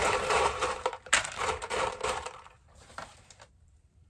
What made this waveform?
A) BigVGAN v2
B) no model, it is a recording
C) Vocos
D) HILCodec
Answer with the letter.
A